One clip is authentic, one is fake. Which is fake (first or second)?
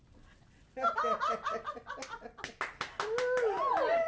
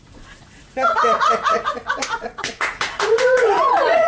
second